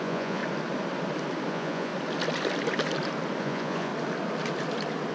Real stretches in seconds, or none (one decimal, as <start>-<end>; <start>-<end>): 0.4-1.5; 1.9-3.4; 3.9-5.1